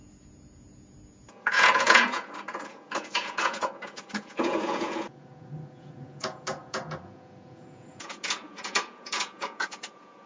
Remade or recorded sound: remade